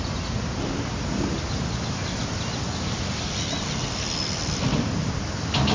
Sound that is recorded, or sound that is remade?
recorded